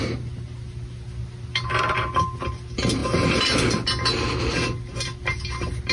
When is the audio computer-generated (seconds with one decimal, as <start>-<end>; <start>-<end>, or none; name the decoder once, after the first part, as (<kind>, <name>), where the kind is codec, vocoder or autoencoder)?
none